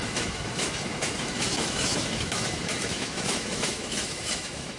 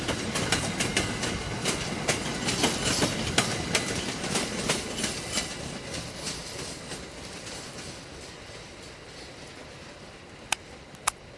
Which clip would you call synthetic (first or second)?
first